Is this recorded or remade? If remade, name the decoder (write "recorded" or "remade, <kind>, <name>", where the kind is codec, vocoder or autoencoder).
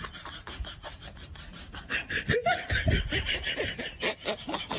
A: recorded